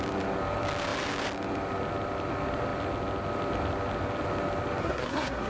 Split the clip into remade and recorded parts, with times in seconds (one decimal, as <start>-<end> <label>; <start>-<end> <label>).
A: 0.0-4.8 recorded; 4.8-5.5 remade